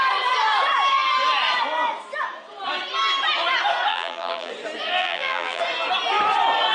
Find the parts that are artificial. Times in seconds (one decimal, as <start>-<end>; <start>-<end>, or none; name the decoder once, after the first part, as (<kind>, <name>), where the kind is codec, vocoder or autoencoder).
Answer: 3.9-4.5 (vocoder, BigVGAN v2); 5.0-5.6